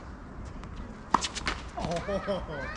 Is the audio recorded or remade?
recorded